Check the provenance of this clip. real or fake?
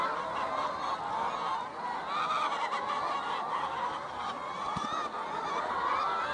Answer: real